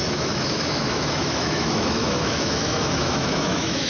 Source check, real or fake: fake